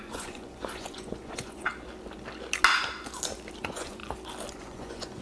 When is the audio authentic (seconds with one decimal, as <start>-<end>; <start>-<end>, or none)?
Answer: 1.7-3.6; 4.0-4.5